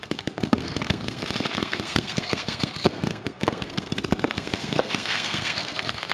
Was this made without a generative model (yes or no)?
no